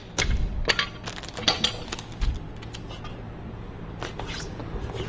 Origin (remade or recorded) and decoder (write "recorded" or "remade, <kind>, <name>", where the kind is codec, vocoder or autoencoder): recorded